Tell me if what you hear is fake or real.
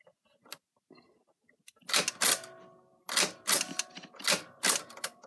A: real